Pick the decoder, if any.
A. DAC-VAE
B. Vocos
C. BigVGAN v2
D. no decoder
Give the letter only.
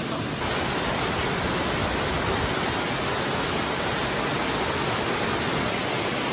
D